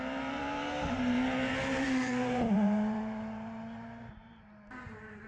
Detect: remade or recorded remade